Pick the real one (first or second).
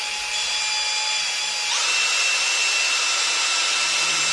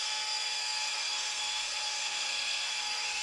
first